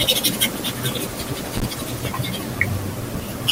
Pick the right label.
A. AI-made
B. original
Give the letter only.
B